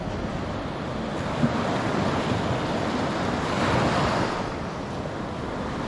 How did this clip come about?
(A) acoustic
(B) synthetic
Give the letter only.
A